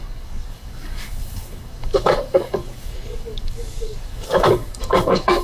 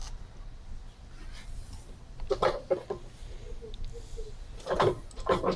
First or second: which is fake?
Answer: first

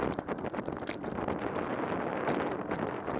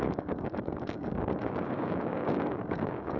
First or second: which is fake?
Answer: second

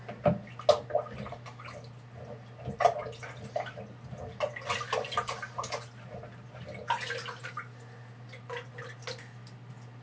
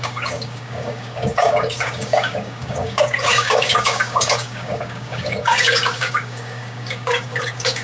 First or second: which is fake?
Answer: second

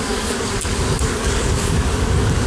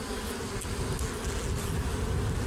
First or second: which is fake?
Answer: first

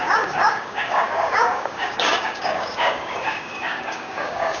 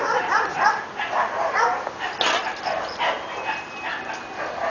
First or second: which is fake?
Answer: first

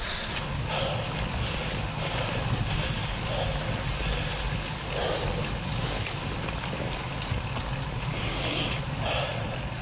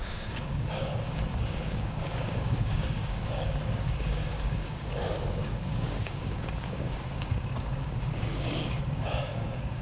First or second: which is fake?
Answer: second